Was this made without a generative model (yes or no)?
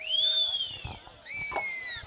yes